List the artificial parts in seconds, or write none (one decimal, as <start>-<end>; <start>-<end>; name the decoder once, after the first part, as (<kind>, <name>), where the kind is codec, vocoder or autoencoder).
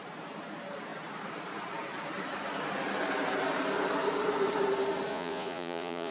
5.1-6.1 (vocoder, Vocos)